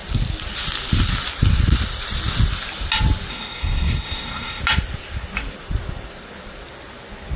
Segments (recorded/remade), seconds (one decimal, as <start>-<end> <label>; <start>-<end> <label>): 0.0-3.3 recorded; 3.3-4.6 remade; 4.6-7.4 recorded